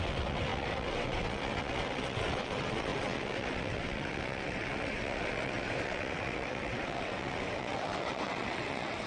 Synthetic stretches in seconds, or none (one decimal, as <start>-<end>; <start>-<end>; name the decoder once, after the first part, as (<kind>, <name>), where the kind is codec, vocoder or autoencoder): 0.0-9.1 (vocoder, WaveNeXt)